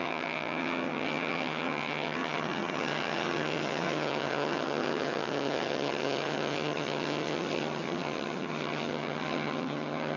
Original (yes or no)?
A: no